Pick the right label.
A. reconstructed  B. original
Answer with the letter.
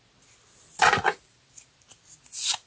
B